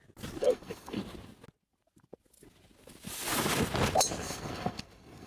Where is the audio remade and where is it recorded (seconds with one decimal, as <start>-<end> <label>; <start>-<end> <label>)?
0.0-0.4 recorded; 0.4-1.0 remade; 1.0-4.2 recorded; 4.2-5.3 remade